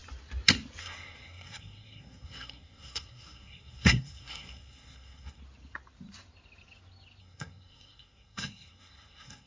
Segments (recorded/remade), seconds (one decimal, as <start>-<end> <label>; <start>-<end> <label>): 0.0-0.8 recorded; 0.8-5.4 remade; 5.4-7.2 recorded; 7.2-9.5 remade